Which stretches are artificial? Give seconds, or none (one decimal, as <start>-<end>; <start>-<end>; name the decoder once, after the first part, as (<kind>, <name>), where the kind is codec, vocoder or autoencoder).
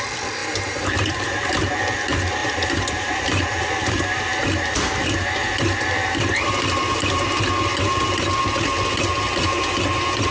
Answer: 0.4-1.7 (vocoder, BigVGAN v2); 2.4-7.4